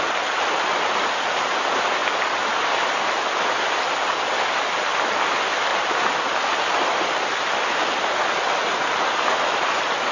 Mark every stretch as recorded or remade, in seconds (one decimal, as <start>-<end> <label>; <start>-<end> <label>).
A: 0.0-10.1 recorded